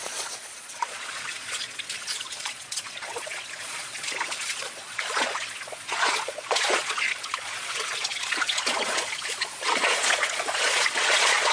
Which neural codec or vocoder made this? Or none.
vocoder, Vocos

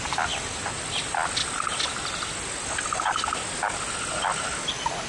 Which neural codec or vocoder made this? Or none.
none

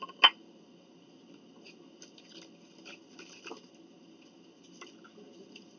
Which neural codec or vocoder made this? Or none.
none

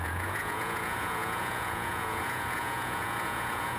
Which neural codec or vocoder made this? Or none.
vocoder, Vocos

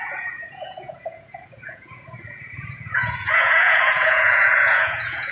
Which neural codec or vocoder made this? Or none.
vocoder, Vocos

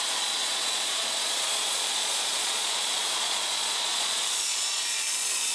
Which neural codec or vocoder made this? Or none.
vocoder, Vocos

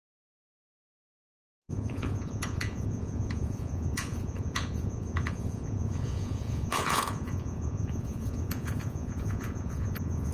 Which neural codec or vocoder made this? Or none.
vocoder, Vocos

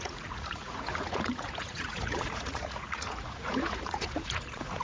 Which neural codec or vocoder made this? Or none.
vocoder, Vocos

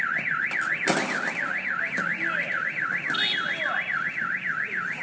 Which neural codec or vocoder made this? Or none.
none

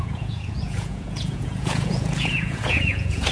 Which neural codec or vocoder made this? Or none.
vocoder, Vocos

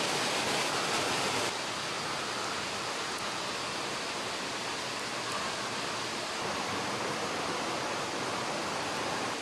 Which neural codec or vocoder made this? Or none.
none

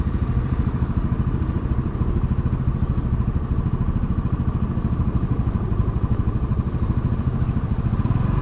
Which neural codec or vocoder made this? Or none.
none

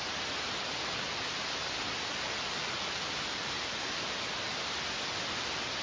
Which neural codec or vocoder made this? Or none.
none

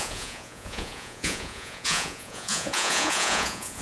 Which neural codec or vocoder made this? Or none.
vocoder, Vocos